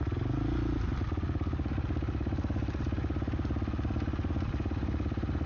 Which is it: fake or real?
real